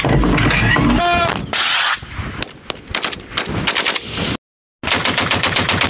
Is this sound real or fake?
real